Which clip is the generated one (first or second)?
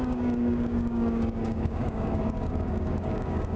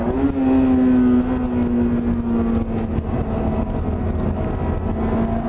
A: first